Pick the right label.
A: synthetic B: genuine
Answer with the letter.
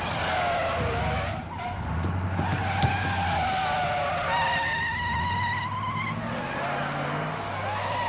B